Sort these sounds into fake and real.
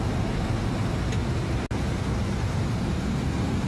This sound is real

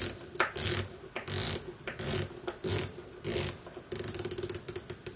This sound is real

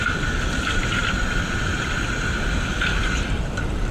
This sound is real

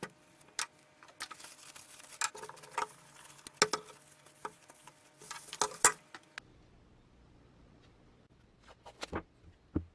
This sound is real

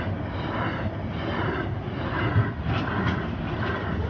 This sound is real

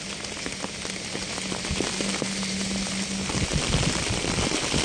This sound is real